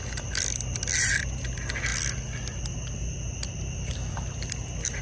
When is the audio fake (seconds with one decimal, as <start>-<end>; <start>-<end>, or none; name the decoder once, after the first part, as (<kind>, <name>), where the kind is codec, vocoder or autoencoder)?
none